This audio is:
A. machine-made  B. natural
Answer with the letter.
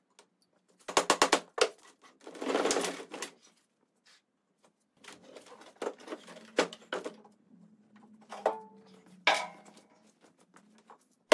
B